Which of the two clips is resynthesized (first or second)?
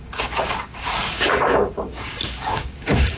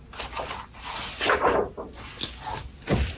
first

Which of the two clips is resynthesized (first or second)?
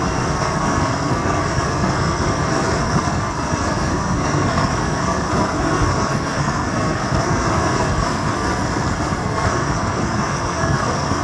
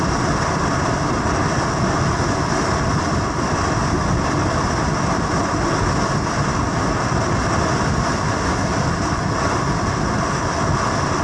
first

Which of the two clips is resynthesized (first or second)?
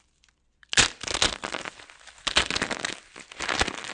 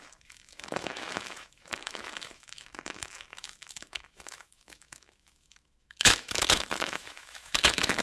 second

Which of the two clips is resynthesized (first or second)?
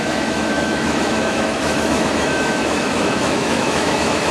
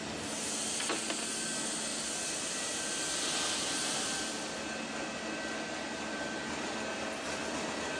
first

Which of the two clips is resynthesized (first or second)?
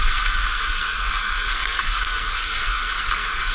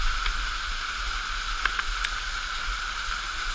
first